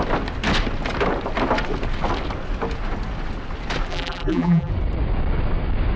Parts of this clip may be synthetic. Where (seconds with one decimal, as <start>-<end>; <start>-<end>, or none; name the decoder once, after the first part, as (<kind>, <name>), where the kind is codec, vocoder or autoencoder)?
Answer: 3.9-4.7 (vocoder, BigVGAN v2)